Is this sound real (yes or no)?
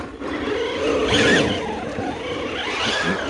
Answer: yes